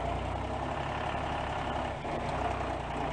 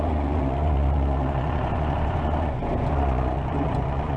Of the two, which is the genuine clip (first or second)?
first